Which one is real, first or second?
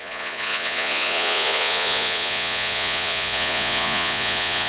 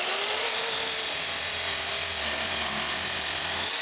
second